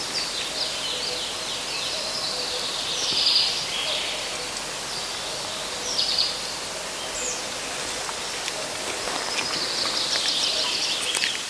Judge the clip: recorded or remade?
recorded